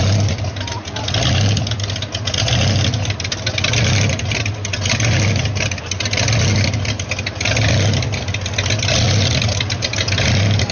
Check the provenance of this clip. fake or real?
real